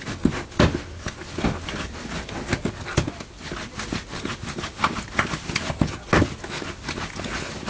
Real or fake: real